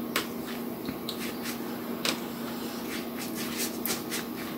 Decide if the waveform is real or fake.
real